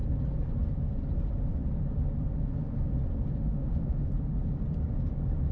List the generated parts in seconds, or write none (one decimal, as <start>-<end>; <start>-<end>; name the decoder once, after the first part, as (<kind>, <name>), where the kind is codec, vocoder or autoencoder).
3.4-4.1 (autoencoder, DAC-VAE)